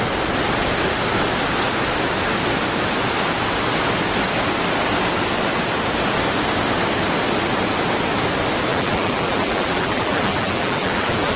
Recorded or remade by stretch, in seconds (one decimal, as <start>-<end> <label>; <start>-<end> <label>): 0.0-8.7 recorded; 8.7-11.4 remade